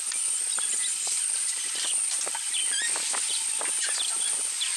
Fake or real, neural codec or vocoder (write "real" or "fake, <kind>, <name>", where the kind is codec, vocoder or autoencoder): real